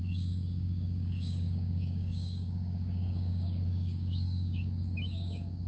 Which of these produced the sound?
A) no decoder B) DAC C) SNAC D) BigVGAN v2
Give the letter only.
B